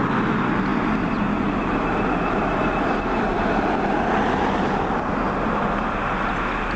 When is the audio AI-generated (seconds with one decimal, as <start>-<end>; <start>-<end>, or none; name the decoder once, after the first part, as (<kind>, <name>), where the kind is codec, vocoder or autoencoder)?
none